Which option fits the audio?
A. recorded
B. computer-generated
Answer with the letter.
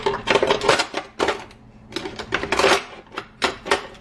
A